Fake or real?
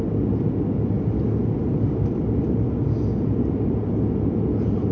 real